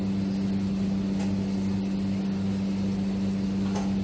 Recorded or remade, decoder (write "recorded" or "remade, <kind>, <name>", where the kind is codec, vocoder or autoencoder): recorded